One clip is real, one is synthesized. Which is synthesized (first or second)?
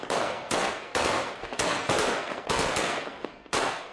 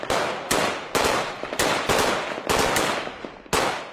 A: first